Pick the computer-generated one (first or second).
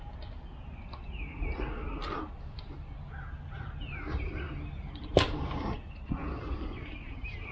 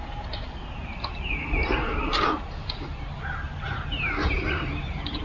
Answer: second